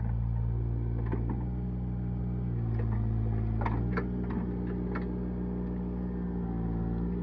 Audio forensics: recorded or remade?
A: recorded